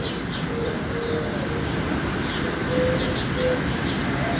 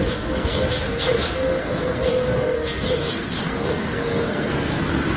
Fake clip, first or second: second